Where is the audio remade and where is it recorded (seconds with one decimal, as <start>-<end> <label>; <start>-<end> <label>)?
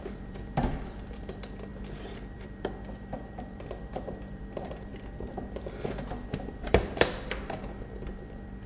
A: 0.0-4.9 remade; 4.9-6.5 recorded; 6.5-8.7 remade